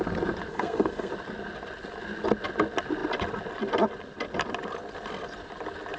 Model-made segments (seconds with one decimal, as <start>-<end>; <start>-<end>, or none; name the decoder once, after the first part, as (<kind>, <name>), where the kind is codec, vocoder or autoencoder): 0.5-1.1 (codec, SNAC)